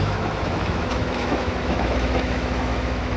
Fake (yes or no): yes